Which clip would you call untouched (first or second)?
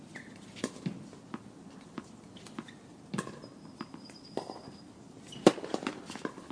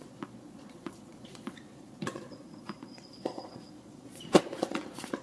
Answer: first